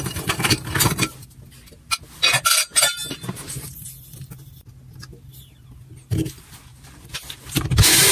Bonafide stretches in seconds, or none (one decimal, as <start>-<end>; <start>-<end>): 0.0-6.7